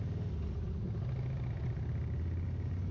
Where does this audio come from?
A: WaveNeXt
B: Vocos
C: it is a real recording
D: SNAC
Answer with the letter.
C